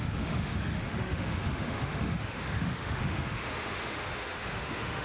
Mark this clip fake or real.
fake